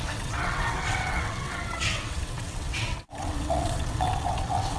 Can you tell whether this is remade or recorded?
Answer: remade